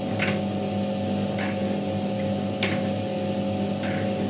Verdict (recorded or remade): recorded